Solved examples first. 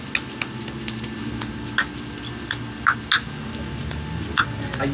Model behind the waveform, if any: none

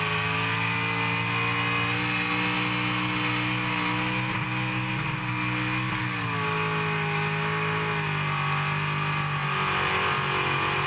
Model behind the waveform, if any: none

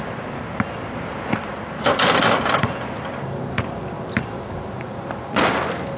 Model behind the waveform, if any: none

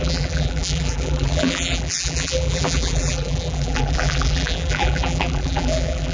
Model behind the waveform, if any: vocoder, BigVGAN v2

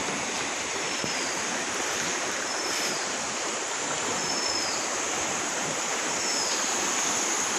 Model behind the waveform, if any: vocoder, BigVGAN v2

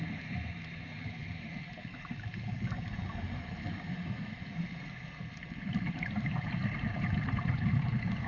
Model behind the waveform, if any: vocoder, BigVGAN v2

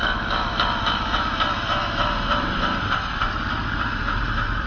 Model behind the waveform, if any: vocoder, BigVGAN v2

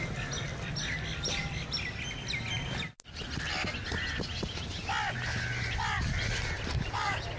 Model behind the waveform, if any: none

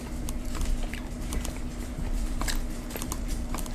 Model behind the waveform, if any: vocoder, BigVGAN v2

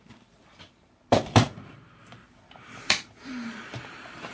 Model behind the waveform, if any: vocoder, BigVGAN v2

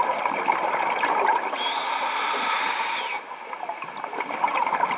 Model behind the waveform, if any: none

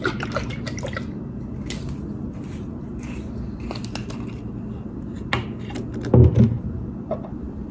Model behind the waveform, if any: none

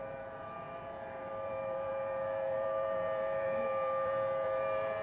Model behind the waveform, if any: vocoder, BigVGAN v2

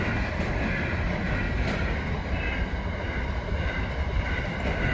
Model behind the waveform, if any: none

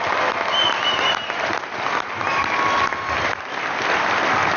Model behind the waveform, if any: vocoder, BigVGAN v2